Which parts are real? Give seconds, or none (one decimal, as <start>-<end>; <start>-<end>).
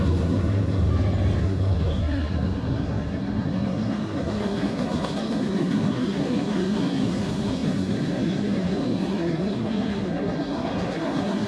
0.9-1.4